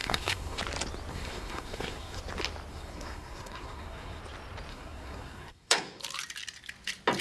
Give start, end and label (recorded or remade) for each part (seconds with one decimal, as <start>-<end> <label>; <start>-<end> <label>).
0.0-0.6 remade; 0.6-1.1 recorded; 1.1-2.2 remade; 2.2-2.7 recorded; 2.7-4.2 remade; 4.2-4.7 recorded; 4.7-6.0 remade; 6.0-7.2 recorded